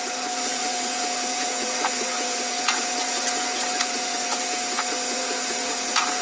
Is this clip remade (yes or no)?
yes